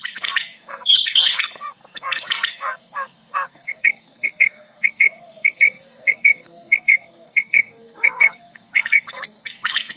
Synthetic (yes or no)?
yes